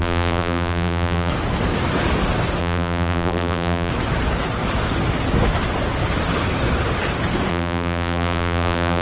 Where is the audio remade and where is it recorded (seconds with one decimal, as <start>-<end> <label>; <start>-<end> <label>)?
0.0-1.3 remade; 1.3-2.6 recorded; 2.6-3.9 remade; 3.9-7.5 recorded; 7.5-9.0 remade